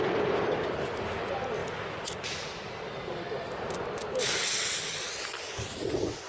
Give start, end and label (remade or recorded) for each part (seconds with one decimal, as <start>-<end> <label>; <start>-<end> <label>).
0.0-1.6 recorded; 1.6-3.8 remade; 3.8-6.3 recorded